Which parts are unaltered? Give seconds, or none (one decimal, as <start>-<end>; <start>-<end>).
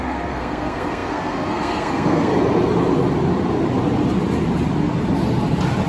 2.3-5.9